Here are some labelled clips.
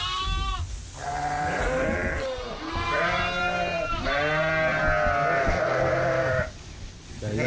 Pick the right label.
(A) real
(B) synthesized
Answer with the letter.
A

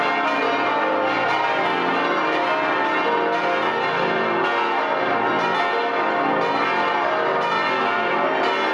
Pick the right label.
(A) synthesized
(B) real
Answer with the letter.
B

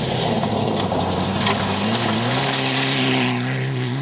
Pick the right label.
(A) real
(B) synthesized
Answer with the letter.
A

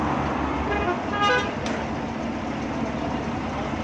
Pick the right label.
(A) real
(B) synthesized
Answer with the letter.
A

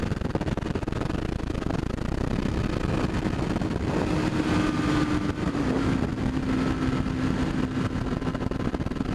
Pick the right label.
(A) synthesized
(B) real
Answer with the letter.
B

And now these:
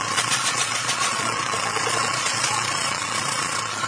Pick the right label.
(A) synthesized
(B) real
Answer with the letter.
A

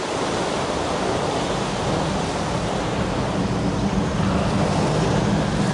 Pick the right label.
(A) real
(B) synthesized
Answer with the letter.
A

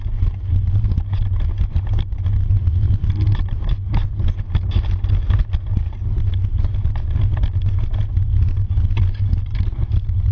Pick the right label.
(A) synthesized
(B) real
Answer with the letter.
B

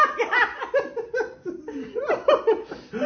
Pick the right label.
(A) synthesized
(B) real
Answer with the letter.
B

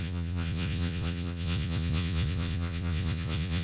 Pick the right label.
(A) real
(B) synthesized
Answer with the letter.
B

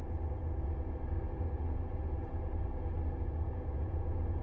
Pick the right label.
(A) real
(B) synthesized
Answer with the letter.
B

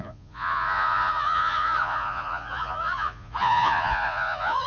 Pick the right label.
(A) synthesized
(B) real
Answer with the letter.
A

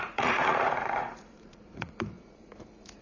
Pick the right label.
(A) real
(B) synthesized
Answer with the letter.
B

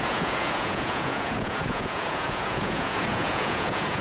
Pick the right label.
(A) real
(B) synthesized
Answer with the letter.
B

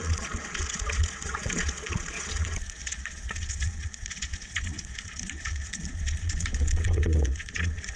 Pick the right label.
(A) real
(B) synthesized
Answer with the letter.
B